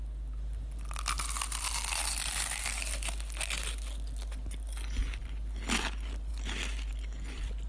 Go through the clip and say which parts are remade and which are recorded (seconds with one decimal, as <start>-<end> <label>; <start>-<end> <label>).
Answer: 0.0-7.7 recorded